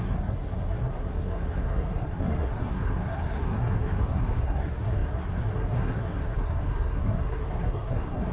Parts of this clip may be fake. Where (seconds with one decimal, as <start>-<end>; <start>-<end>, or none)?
0.0-8.3